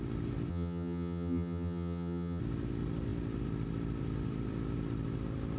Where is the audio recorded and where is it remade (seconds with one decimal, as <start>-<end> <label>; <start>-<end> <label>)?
0.0-0.5 recorded; 0.5-2.4 remade; 2.4-5.6 recorded